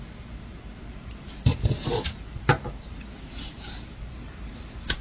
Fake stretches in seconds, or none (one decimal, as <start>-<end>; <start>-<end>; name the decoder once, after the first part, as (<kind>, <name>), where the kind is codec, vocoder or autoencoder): none